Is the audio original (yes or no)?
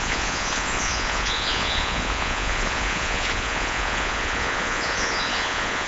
no